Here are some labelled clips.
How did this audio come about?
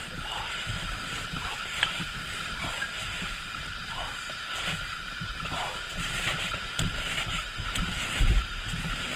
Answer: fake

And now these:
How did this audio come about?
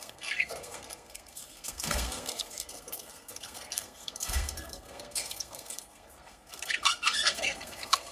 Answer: fake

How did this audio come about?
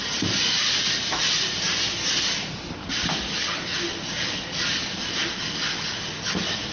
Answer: real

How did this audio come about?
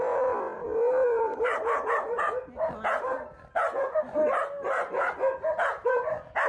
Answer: real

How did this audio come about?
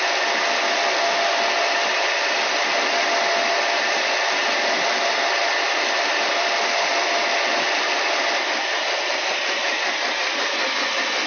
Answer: real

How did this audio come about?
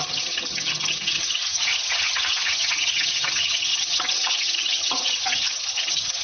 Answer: fake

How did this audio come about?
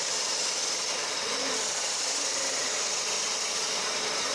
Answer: real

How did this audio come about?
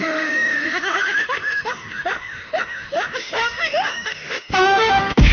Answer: fake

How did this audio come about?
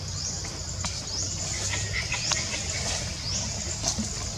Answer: real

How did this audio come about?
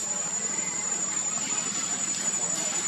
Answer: fake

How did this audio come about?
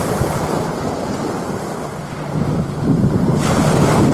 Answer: fake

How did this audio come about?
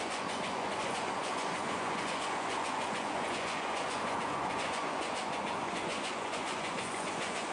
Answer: fake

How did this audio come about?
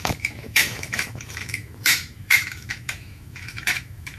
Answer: fake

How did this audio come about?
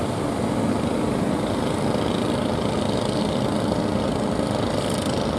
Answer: real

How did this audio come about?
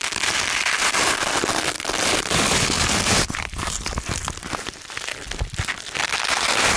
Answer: fake